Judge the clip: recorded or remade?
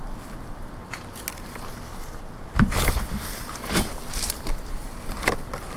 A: recorded